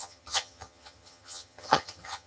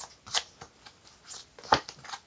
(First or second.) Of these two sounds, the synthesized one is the first